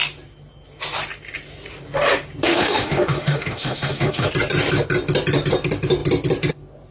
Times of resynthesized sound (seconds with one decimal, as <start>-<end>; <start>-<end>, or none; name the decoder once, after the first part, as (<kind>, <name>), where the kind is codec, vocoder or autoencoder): 2.5-4.3 (autoencoder, DAC-VAE)